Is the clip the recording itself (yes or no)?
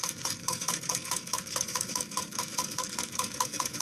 no